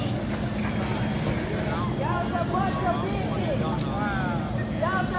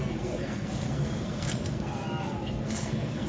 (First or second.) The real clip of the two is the first